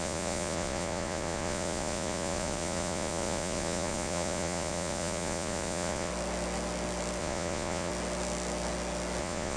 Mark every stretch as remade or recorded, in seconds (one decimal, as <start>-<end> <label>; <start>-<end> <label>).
0.0-6.1 remade; 6.1-7.2 recorded; 7.2-7.9 remade; 7.9-9.2 recorded; 9.2-9.6 remade

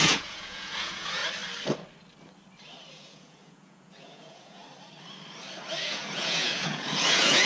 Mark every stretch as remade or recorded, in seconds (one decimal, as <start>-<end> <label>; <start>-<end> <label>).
0.0-1.2 remade; 1.2-2.9 recorded; 2.9-4.6 remade; 4.6-5.8 recorded; 5.8-7.5 remade

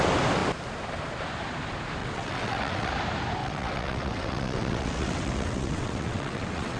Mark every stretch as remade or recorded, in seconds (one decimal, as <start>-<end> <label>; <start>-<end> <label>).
0.0-2.0 recorded; 2.0-2.9 remade; 2.9-3.4 recorded; 3.4-6.8 remade

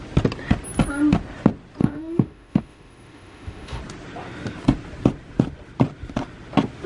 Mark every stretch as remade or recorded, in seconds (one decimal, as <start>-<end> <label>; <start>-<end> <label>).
0.0-1.8 recorded; 1.8-3.8 remade; 3.8-6.9 recorded

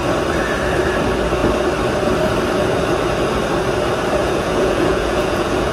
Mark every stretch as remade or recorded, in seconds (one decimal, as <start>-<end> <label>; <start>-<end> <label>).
0.0-4.2 recorded; 4.2-5.7 remade